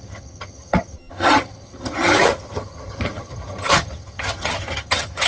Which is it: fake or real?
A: fake